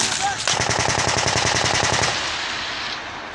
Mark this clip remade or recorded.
recorded